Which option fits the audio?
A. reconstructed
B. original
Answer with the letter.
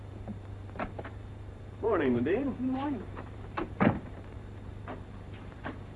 A